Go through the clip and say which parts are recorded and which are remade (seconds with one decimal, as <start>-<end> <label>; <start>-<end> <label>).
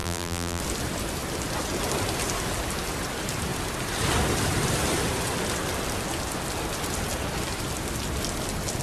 0.0-0.6 remade; 0.6-8.8 recorded